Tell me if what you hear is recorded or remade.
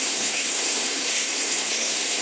remade